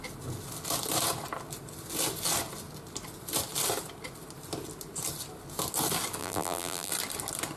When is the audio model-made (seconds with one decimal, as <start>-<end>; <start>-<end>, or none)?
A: 6.2-6.9